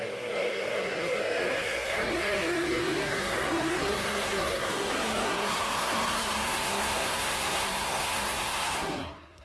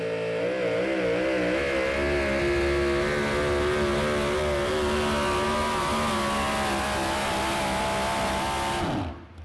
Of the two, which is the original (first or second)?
second